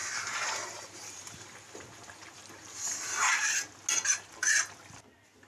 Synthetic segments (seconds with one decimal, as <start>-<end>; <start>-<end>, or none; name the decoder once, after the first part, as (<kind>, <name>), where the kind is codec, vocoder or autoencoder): 0.0-3.3 (vocoder, BigVGAN v2)